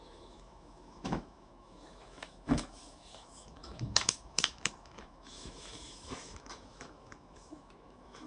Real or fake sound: fake